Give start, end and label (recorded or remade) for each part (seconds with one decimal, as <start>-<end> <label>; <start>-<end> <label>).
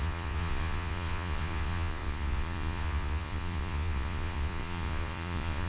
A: 0.0-5.7 remade